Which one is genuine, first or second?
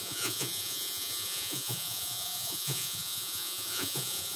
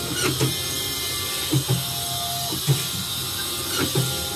second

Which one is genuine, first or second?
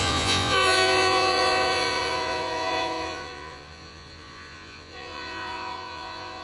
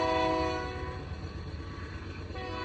second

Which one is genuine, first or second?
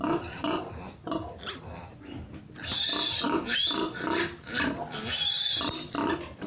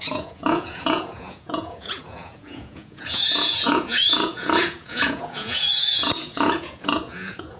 first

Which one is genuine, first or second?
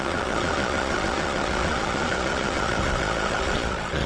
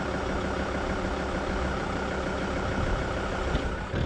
second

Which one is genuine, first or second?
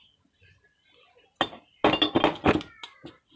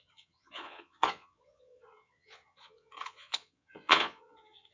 first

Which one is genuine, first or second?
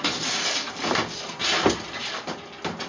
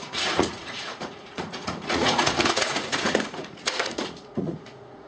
first